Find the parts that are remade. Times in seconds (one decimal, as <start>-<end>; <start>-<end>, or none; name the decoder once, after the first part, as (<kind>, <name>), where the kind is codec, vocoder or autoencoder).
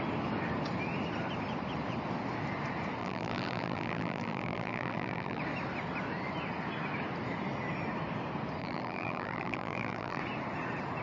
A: 3.0-5.4 (vocoder, BigVGAN v2); 8.6-10.2